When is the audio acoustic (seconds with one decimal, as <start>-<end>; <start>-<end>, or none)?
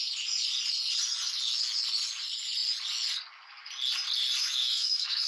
0.0-4.4